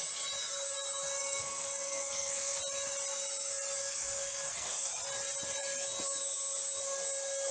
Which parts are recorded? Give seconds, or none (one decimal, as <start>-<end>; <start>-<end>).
0.0-1.2; 2.6-3.8; 4.9-7.5